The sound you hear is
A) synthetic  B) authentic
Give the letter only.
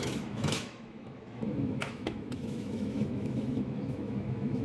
A